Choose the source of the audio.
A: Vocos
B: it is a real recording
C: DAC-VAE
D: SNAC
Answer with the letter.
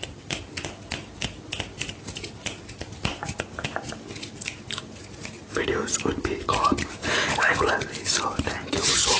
B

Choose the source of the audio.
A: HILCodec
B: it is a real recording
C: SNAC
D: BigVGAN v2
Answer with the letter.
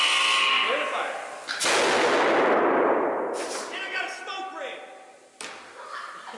B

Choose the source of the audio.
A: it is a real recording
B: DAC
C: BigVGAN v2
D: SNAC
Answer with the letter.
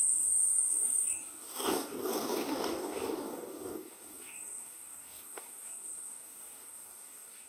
B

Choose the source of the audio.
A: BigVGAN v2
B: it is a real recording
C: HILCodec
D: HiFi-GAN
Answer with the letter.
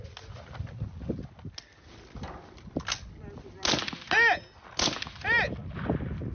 B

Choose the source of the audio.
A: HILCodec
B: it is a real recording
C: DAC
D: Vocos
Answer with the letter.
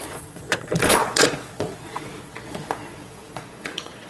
D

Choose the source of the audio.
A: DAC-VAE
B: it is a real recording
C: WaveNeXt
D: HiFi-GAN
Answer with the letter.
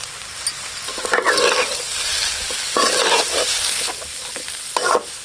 B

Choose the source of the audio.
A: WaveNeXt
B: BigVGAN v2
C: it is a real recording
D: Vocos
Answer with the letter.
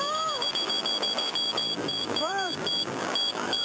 B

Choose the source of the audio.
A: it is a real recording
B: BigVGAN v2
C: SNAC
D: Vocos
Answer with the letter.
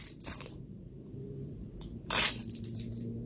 B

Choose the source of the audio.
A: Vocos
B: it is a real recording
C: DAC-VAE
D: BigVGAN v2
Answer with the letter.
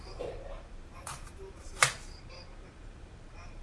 D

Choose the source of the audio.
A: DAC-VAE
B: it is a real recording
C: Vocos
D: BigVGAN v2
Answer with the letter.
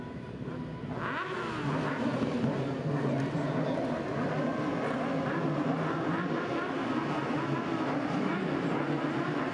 B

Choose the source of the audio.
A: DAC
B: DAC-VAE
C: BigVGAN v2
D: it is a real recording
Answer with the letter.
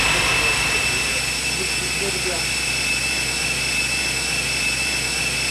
D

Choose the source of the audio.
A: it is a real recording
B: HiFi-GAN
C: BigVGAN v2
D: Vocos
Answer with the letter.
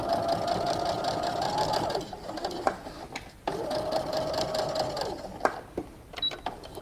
A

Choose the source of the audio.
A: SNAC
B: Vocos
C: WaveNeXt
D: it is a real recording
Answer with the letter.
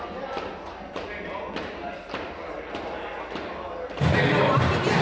D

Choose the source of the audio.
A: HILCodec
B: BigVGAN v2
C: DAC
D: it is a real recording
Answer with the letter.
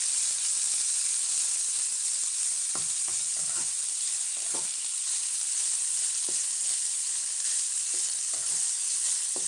D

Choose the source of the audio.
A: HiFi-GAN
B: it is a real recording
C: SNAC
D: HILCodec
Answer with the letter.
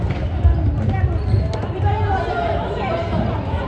B